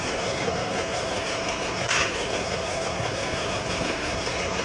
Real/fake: fake